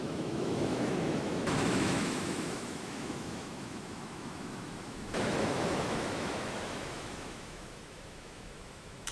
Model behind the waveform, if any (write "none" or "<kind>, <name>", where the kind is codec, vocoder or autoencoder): autoencoder, DAC-VAE